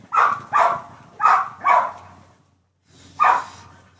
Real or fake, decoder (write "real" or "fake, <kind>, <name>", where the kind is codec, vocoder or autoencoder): fake, vocoder, BigVGAN v2